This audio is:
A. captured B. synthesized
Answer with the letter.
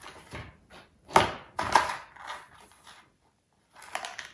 A